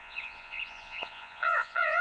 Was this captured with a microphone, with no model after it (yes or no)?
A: no